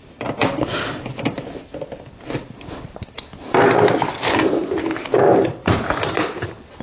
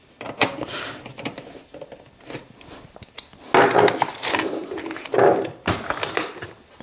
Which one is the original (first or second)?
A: second